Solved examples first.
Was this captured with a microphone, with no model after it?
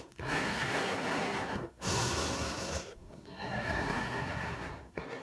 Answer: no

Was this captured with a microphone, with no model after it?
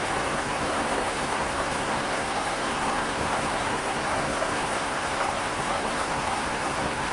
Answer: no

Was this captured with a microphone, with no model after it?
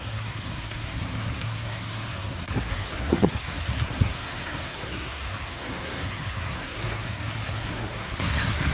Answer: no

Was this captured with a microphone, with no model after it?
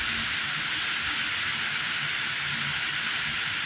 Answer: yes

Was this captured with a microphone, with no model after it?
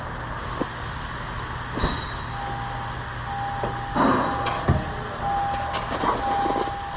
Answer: yes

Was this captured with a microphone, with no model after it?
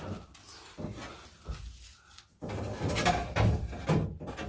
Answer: yes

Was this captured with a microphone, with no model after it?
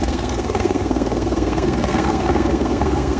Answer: no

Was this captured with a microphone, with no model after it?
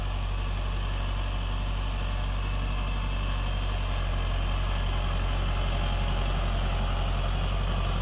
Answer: yes